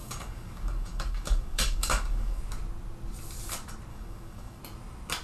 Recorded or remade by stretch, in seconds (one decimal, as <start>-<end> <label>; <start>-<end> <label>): 0.0-2.4 remade; 2.4-3.9 recorded; 3.9-4.6 remade; 4.6-5.2 recorded